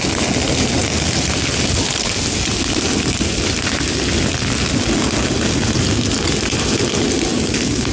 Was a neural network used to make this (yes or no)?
no